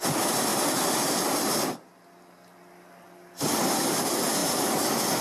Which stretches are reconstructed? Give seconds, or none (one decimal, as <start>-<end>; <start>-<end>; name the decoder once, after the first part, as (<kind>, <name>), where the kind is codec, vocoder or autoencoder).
0.5-1.6 (vocoder, BigVGAN v2)